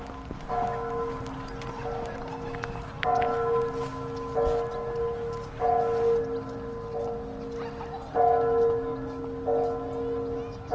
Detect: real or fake real